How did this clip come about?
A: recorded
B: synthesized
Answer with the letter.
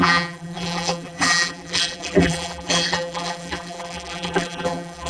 B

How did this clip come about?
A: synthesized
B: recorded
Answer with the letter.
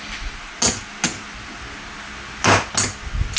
B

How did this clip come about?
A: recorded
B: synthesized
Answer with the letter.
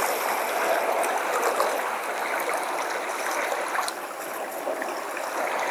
A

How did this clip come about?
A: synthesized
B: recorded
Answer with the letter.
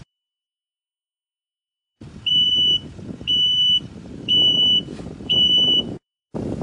A